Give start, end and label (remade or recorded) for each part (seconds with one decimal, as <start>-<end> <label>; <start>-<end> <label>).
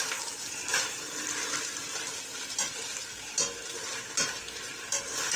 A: 0.0-5.4 recorded